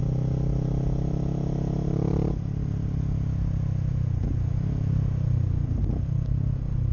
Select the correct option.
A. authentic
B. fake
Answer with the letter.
A